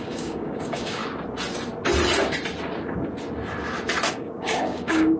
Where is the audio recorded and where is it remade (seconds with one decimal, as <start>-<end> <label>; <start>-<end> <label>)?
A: 0.0-1.0 remade; 1.0-4.1 recorded; 4.1-5.2 remade